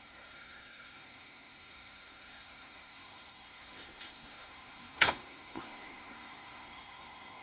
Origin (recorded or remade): remade